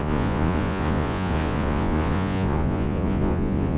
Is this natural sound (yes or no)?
no